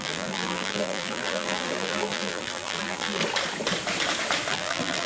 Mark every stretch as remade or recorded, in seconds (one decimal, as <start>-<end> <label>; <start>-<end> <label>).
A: 0.0-3.2 remade; 3.2-4.5 recorded; 4.5-5.1 remade